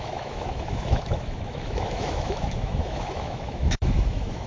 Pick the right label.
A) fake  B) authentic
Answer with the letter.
A